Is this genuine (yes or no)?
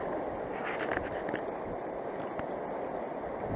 yes